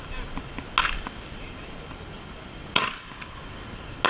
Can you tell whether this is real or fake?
real